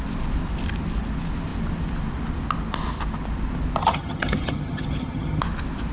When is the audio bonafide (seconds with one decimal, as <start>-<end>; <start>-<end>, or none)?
0.0-3.8; 5.4-5.9